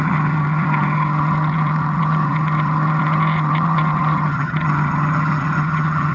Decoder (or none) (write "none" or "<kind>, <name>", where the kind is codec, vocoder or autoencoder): vocoder, HiFi-GAN